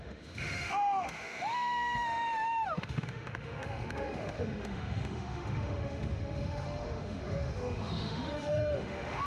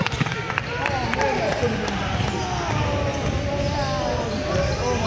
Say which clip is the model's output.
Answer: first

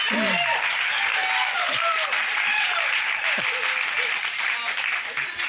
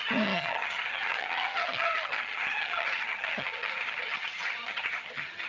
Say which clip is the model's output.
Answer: second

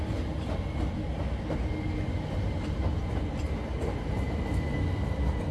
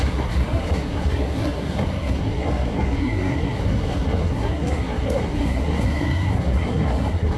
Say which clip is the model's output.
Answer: second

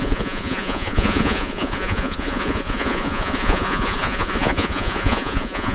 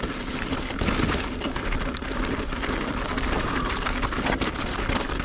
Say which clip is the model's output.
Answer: first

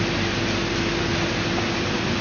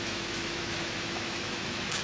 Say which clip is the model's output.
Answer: second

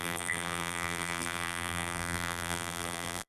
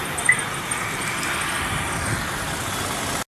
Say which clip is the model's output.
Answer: first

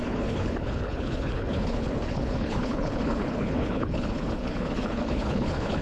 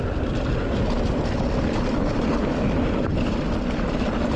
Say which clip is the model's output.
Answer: first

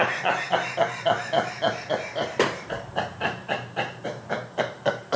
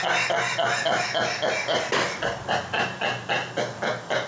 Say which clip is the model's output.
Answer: first